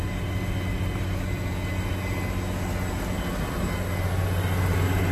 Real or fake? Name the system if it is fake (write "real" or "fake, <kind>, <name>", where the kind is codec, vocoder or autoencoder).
real